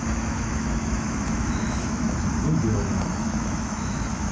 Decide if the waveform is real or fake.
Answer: fake